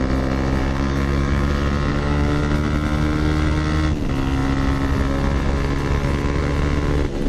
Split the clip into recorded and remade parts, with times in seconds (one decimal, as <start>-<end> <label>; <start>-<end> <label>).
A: 0.0-0.6 recorded; 0.6-1.5 remade; 1.5-1.9 recorded; 1.9-2.4 remade; 2.4-7.3 recorded